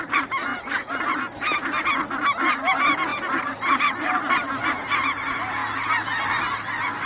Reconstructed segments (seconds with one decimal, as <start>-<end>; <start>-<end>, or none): 0.5-1.2; 3.1-4.2